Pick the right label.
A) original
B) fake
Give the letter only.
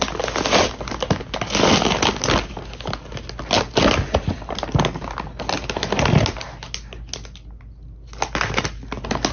A